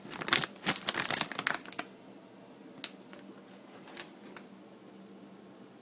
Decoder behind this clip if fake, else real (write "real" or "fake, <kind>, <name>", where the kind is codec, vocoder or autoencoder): real